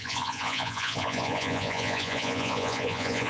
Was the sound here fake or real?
fake